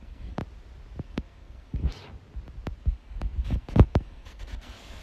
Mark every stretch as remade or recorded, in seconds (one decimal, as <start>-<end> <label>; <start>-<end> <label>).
0.0-0.4 remade; 0.4-1.0 recorded; 1.0-1.9 remade; 1.9-2.8 recorded; 2.8-5.0 remade